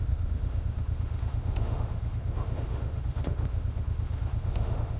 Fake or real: fake